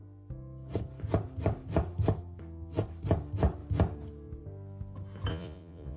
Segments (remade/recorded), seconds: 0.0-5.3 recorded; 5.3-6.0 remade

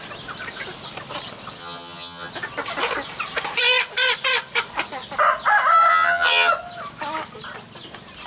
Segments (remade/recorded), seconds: 0.0-1.6 recorded; 1.6-2.3 remade; 2.3-5.9 recorded; 5.9-6.5 remade; 6.5-8.3 recorded

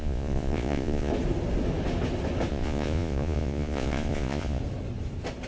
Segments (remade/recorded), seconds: 0.0-1.1 remade; 1.1-2.5 recorded; 2.5-4.6 remade; 4.6-5.5 recorded

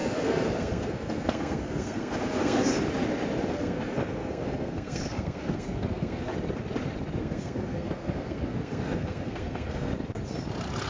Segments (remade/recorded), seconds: 0.0-2.7 remade; 2.7-3.5 recorded; 3.5-6.3 remade; 6.3-7.2 recorded; 7.2-9.9 remade; 9.9-10.9 recorded

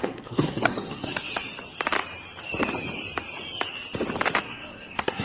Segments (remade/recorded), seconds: 0.0-1.3 remade; 1.3-4.4 recorded; 4.4-5.2 remade

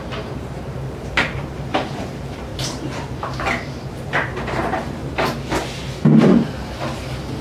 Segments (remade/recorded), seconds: 0.0-5.0 remade; 5.0-7.4 recorded

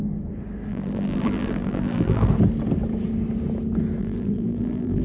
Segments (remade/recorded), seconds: 0.0-0.7 recorded; 0.7-2.3 remade; 2.3-4.0 recorded; 4.0-5.0 remade

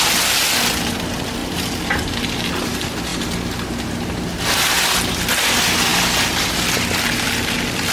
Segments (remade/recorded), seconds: 0.0-1.4 recorded; 1.4-2.0 remade; 2.0-7.9 recorded